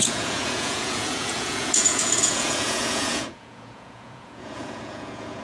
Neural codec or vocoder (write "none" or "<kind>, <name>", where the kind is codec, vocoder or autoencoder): vocoder, Vocos